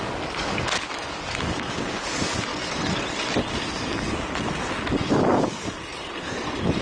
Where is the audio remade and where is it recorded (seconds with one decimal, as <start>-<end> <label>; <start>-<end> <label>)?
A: 0.0-2.5 remade; 2.5-6.8 recorded